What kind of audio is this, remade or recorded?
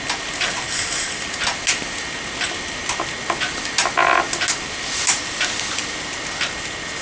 recorded